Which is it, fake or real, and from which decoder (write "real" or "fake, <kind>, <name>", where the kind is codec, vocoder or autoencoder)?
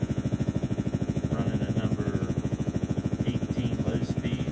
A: fake, vocoder, Vocos